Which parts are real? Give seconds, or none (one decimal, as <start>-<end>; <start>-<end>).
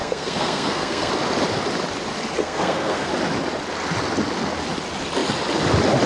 1.1-2.4; 3.1-6.1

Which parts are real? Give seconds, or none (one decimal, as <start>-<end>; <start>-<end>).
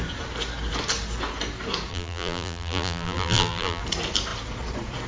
0.0-1.9; 3.8-5.1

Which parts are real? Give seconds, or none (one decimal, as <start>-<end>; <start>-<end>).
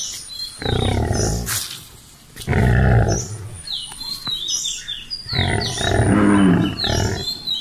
0.0-7.6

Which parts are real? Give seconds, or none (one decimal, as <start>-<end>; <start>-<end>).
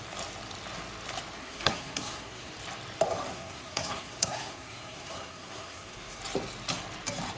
0.0-1.4; 2.5-3.3; 6.2-7.4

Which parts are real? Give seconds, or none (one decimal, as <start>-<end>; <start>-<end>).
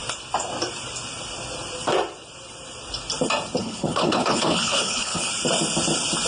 0.0-3.6; 5.3-6.3